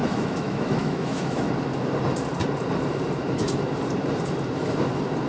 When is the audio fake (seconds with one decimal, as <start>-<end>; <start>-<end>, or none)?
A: 0.0-1.5